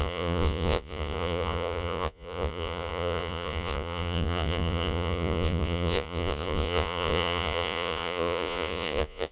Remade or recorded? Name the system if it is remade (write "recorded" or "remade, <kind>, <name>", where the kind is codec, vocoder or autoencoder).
remade, vocoder, Vocos